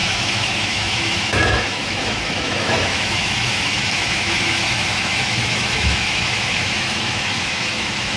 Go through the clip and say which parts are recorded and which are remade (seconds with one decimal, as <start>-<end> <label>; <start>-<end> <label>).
0.0-8.2 remade